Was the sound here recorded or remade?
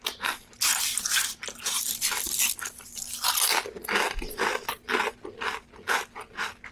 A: recorded